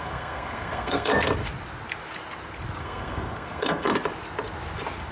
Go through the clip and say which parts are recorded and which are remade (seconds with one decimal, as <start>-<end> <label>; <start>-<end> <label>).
0.0-1.1 remade; 1.1-2.8 recorded; 2.8-3.9 remade; 3.9-5.1 recorded

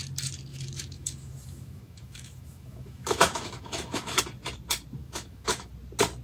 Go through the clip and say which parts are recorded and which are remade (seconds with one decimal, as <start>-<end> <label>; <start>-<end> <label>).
0.0-0.5 recorded; 0.5-4.2 remade; 4.2-5.0 recorded; 5.0-5.7 remade; 5.7-6.2 recorded

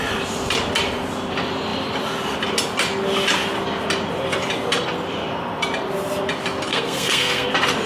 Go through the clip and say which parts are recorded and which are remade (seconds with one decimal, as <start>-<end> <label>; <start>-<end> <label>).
0.0-6.7 recorded; 6.7-7.5 remade; 7.5-7.9 recorded

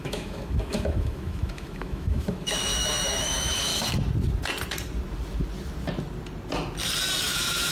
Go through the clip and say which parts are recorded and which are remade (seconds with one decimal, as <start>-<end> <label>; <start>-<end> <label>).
0.0-3.7 remade; 3.7-7.2 recorded; 7.2-7.7 remade

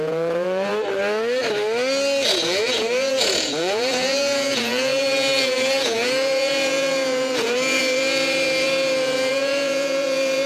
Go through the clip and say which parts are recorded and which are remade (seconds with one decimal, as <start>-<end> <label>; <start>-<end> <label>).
0.0-0.7 remade; 0.7-2.3 recorded; 2.3-10.5 remade